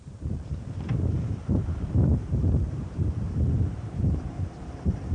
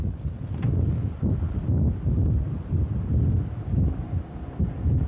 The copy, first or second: first